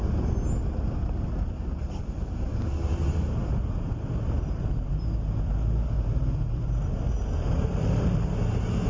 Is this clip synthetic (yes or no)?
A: no